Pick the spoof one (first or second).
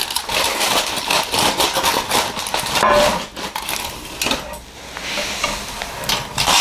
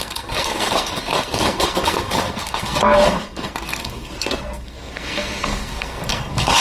second